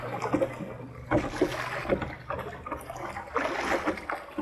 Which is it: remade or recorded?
recorded